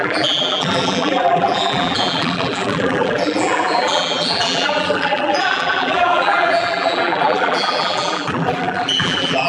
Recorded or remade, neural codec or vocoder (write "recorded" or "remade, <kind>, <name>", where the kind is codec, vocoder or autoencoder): remade, vocoder, BigVGAN v2